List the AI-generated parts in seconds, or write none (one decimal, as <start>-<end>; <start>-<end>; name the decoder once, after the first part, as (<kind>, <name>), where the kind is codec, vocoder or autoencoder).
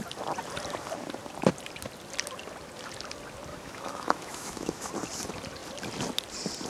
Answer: 3.5-4.9 (autoencoder, DAC-VAE)